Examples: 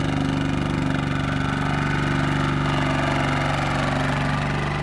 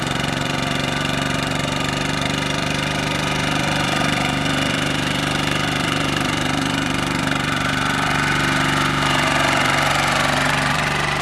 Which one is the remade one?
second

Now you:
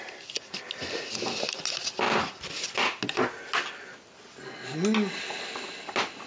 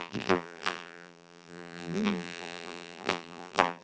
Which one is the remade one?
second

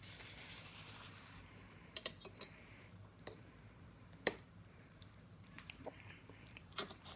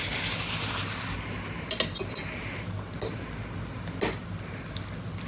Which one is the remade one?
first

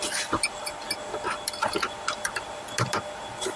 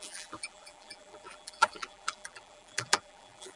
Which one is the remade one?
second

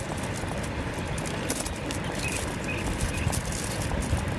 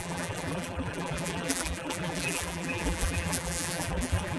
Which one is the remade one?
second